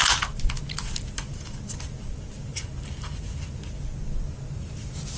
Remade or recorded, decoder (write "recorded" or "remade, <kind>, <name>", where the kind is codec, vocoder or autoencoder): recorded